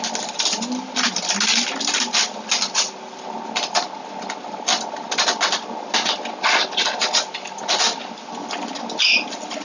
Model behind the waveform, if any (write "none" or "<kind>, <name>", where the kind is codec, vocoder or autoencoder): none